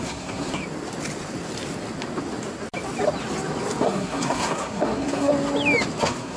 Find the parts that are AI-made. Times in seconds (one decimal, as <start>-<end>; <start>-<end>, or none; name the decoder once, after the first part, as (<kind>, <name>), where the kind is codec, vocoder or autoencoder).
0.0-0.6 (codec, SNAC); 3.8-5.3; 6.0-6.4